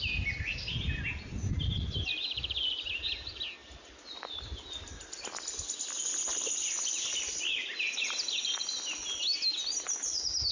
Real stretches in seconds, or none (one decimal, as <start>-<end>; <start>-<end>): 0.0-10.5